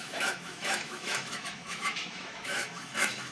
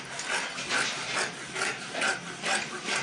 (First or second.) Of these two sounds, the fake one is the first